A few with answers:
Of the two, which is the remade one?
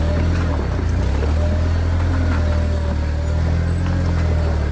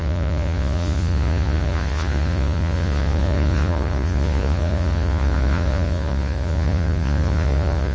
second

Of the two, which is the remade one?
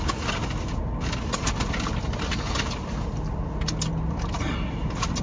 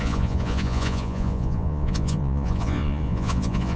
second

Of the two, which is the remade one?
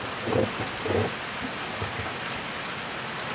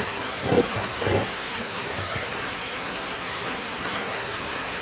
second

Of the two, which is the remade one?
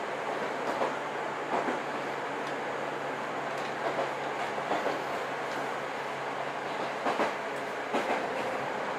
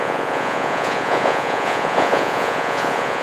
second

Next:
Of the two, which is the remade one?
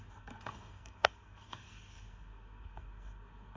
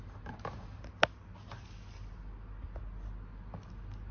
first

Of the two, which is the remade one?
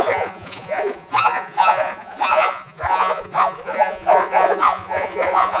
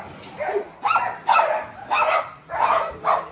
first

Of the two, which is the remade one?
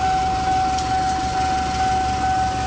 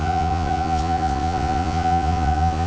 second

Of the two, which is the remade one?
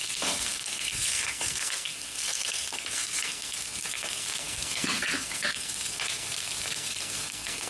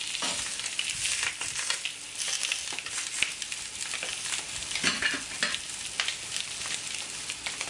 first